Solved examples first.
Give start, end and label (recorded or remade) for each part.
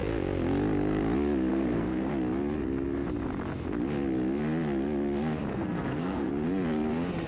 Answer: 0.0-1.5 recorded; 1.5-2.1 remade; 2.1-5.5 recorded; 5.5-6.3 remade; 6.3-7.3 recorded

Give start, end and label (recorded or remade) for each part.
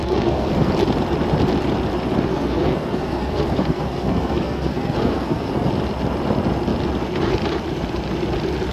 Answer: 0.0-0.7 remade; 0.7-2.3 recorded; 2.3-5.7 remade; 5.7-8.7 recorded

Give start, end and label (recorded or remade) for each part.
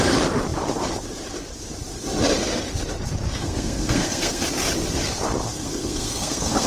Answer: 0.0-3.3 recorded; 3.3-4.4 remade; 4.4-5.5 recorded; 5.5-6.7 remade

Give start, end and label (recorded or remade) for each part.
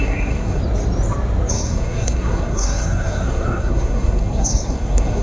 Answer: 0.0-0.6 remade; 0.6-1.5 recorded; 1.5-5.2 remade